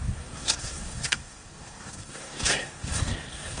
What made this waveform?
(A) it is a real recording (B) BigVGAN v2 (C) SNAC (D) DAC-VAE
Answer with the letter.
C